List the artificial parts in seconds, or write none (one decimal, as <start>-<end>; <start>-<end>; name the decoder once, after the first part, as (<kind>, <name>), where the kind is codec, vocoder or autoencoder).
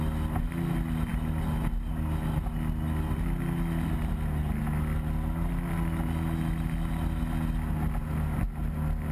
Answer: none